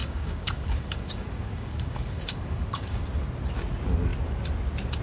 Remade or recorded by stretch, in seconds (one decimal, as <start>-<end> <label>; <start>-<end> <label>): 0.0-3.0 remade; 3.0-5.0 recorded